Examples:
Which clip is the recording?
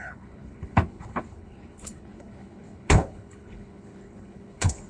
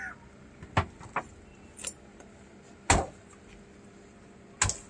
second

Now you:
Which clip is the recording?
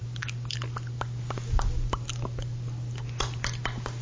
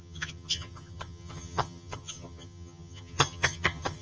first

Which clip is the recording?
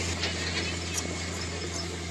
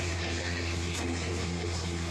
first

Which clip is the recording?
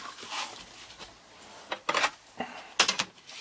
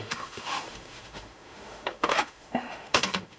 first